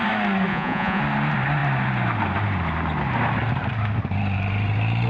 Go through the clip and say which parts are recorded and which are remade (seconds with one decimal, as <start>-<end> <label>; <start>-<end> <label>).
0.0-0.5 recorded; 0.5-1.0 remade; 1.0-5.1 recorded